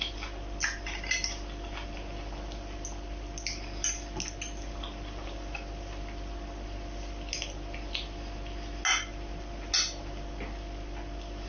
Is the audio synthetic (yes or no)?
no